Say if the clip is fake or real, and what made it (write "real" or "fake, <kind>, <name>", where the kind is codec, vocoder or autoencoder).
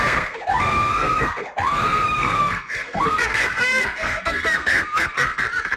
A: fake, codec, SNAC